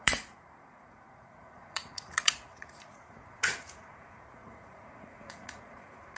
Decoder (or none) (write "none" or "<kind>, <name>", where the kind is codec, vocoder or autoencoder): vocoder, Vocos